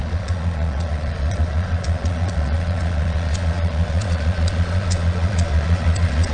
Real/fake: fake